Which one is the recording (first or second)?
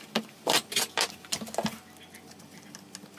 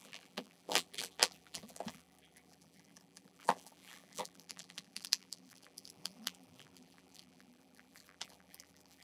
first